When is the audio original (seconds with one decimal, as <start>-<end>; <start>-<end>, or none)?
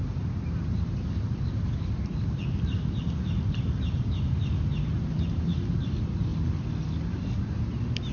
0.0-2.1; 3.6-6.3